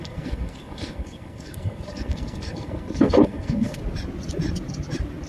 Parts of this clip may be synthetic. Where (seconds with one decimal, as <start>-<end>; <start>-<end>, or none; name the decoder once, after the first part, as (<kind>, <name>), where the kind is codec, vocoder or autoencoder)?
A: 0.0-3.8 (codec, SNAC)